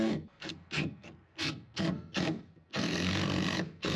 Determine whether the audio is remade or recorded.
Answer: remade